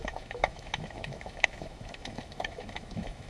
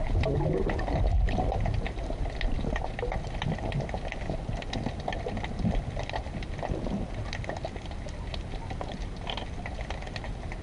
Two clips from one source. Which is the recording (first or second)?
second